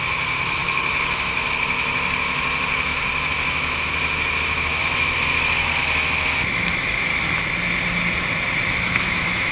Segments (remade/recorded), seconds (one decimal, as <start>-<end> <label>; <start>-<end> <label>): 0.0-5.8 remade; 5.8-6.5 recorded; 6.5-7.1 remade; 7.1-8.8 recorded; 8.8-9.5 remade